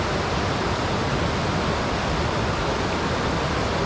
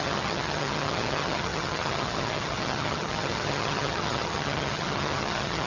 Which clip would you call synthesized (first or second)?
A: second